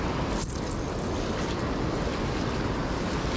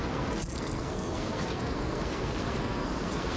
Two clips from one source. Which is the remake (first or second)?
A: second